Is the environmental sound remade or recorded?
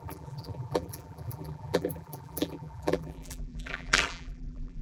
remade